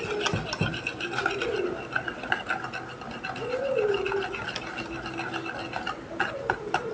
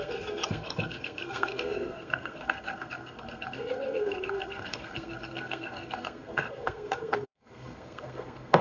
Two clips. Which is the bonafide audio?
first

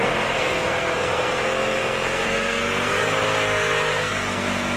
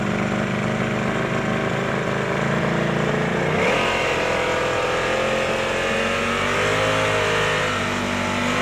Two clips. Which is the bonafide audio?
second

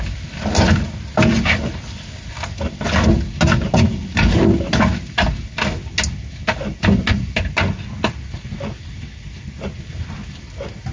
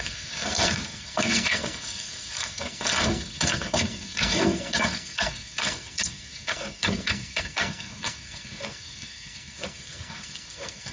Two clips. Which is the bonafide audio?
first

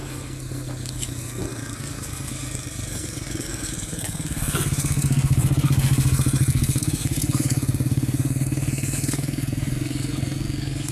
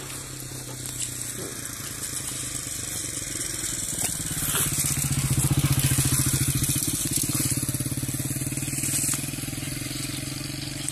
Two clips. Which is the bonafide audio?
second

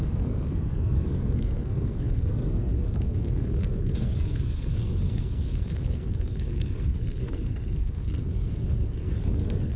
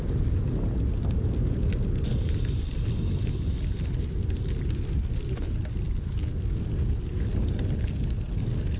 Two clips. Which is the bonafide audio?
second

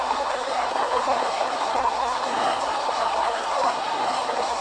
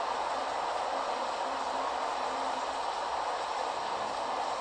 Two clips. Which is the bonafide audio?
second